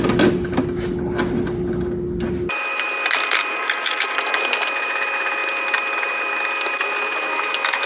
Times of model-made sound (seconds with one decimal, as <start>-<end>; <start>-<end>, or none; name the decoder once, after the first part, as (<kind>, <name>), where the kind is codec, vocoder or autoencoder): none